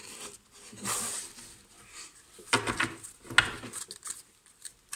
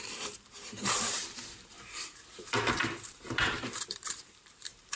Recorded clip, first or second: first